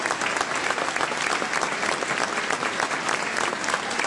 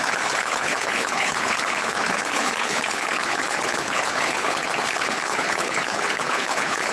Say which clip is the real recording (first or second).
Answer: first